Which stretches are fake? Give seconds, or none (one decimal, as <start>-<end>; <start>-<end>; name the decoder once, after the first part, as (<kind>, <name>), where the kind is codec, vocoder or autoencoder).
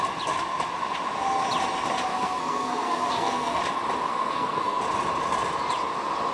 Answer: 2.1-3.6 (codec, SNAC); 4.1-4.8